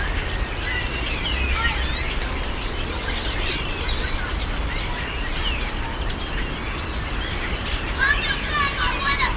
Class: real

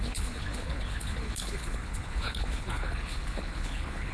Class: fake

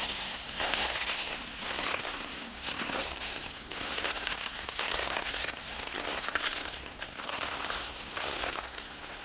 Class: fake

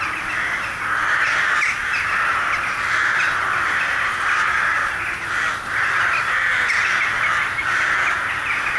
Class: real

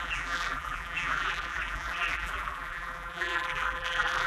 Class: fake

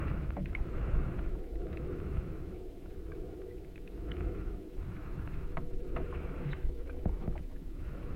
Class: fake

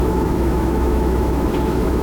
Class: fake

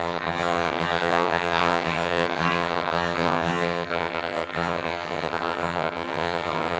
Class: fake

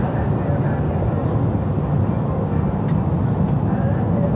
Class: real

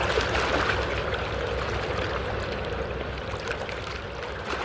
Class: real